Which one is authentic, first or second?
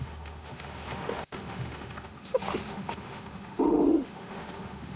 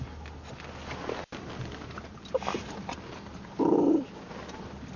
second